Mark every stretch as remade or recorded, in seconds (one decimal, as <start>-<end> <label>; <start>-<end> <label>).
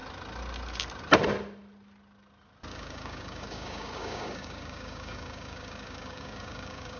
0.0-2.7 recorded; 2.7-7.0 remade